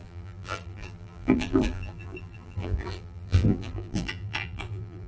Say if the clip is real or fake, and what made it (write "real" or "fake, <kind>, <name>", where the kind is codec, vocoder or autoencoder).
fake, vocoder, BigVGAN v2